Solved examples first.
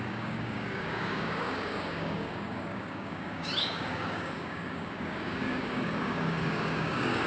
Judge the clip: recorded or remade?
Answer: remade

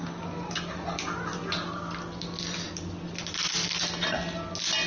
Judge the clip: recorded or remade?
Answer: recorded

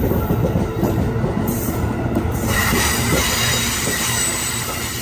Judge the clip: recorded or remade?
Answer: remade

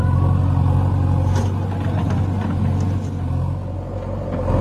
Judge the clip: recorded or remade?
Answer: recorded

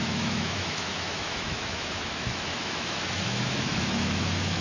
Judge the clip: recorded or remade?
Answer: remade